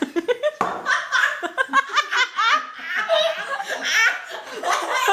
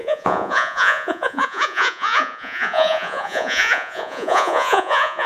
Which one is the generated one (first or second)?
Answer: second